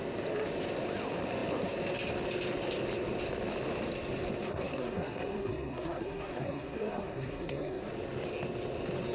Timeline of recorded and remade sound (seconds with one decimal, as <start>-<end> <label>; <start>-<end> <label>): 0.0-4.5 recorded; 4.5-7.9 remade; 7.9-9.1 recorded